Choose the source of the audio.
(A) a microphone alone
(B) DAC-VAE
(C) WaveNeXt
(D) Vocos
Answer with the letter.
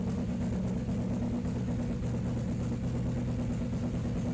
A